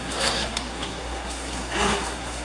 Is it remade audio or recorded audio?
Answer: remade